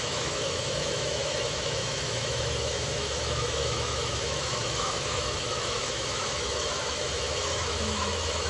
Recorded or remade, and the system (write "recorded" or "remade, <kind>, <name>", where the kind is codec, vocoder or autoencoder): remade, autoencoder, DAC-VAE